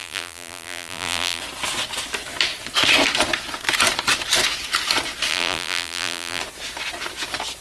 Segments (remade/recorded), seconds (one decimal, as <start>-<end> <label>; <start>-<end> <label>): 0.0-1.4 remade; 1.4-5.3 recorded; 5.3-6.4 remade; 6.4-7.6 recorded

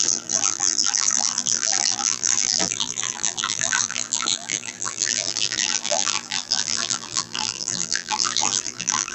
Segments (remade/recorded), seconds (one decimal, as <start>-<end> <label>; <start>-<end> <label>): 0.0-9.1 remade